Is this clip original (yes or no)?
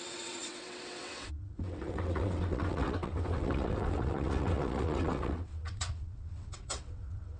no